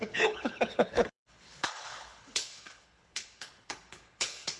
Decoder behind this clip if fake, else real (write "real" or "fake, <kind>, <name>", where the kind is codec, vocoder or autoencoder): fake, codec, HILCodec